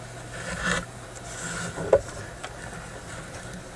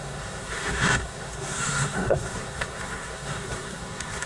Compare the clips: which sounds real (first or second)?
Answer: first